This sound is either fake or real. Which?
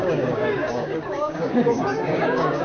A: fake